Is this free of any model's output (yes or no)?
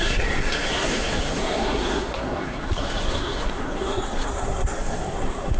no